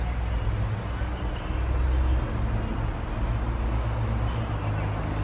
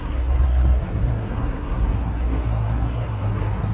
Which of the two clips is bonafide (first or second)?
first